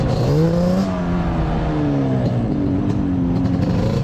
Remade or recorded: recorded